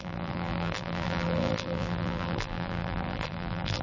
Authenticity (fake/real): fake